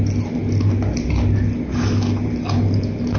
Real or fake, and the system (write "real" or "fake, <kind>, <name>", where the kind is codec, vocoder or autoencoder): real